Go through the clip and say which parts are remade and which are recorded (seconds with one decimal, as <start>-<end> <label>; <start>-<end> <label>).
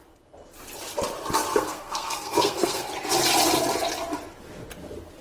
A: 0.0-1.5 recorded; 1.5-2.9 remade; 2.9-5.2 recorded